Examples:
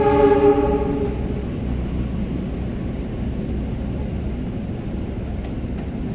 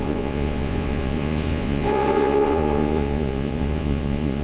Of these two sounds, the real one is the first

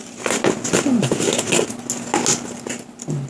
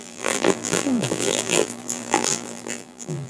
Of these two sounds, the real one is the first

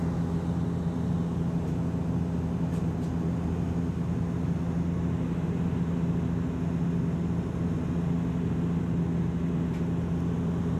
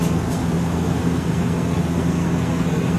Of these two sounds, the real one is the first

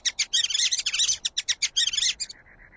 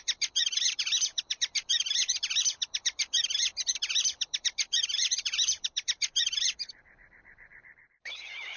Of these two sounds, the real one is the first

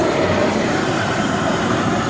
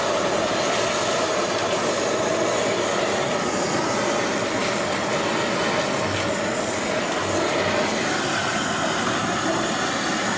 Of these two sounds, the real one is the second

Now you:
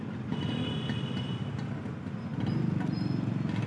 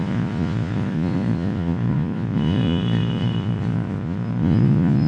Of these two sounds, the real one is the first